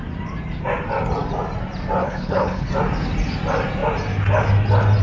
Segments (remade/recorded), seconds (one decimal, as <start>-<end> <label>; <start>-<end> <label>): 0.0-2.0 recorded; 2.0-2.7 remade; 2.7-5.0 recorded